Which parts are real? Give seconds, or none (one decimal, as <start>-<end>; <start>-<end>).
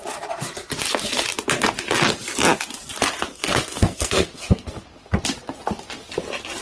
0.0-3.3; 4.8-6.6